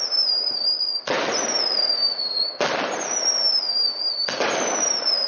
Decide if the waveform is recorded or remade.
recorded